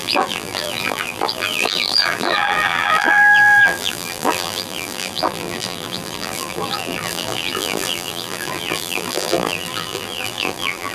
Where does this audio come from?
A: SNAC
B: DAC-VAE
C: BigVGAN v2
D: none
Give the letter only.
C